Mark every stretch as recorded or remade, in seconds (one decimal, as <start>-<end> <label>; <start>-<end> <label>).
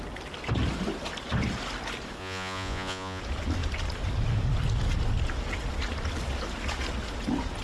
0.0-2.2 recorded; 2.2-3.2 remade; 3.2-7.6 recorded